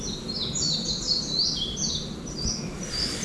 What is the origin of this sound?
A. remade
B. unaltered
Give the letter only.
B